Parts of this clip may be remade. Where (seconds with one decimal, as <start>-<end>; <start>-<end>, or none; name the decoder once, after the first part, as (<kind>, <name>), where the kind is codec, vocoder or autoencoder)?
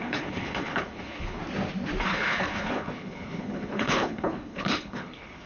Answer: 0.0-1.4 (codec, HILCodec); 2.0-5.5